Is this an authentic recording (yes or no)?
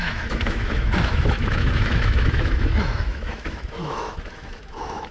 no